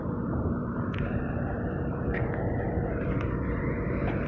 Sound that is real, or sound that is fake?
fake